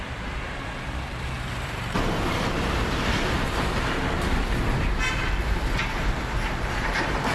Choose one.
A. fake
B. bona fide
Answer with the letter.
A